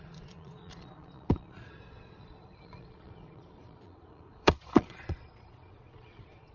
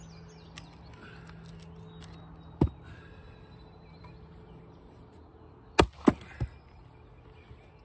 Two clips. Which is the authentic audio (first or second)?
second